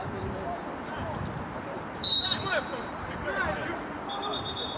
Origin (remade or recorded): remade